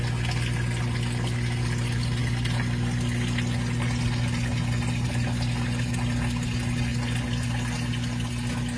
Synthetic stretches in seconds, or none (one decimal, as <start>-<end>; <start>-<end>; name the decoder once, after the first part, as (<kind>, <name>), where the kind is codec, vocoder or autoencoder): none